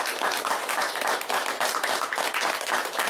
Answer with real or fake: fake